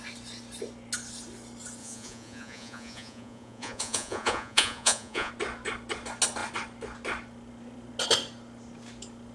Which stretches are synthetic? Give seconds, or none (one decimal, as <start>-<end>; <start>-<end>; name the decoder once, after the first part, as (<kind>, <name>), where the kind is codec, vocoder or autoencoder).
1.8-5.3 (vocoder, Vocos)